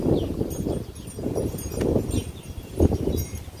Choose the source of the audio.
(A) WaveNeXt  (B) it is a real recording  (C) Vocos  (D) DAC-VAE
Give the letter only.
B